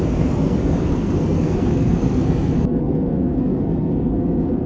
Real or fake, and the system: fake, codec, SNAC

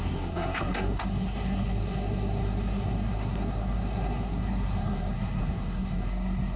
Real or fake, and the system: fake, codec, SNAC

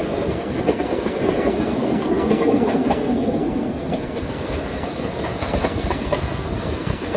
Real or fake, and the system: fake, codec, SNAC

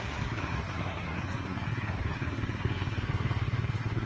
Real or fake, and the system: fake, codec, SNAC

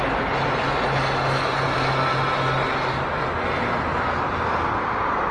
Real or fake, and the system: real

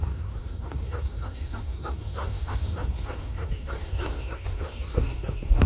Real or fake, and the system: fake, codec, SNAC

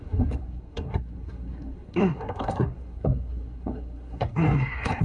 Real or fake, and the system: fake, codec, SNAC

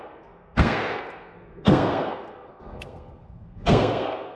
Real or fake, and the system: fake, codec, SNAC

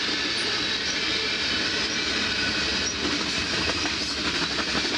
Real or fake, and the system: real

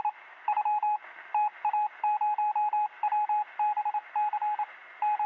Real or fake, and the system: real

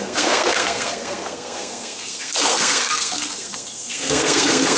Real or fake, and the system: fake, codec, SNAC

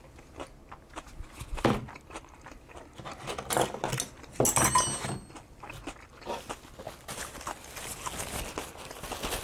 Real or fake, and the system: real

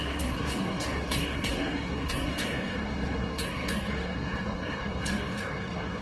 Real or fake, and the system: fake, codec, SNAC